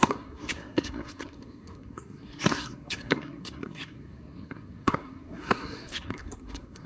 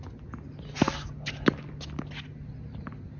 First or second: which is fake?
first